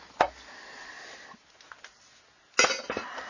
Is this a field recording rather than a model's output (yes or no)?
yes